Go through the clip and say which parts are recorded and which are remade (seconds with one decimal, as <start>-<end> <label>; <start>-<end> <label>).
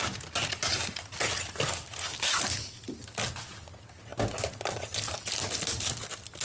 0.0-6.4 recorded